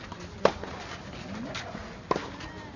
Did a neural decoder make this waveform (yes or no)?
no